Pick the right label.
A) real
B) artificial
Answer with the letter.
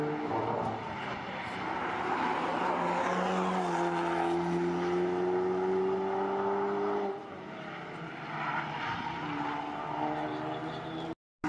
A